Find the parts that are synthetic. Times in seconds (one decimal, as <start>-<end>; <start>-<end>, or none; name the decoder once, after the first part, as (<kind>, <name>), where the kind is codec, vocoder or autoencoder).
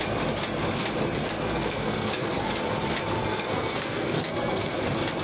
1.2-2.6 (codec, SNAC); 3.2-4.7